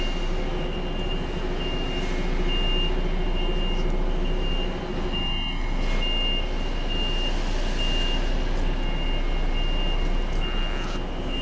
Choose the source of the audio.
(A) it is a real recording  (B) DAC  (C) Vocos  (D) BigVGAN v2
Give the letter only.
A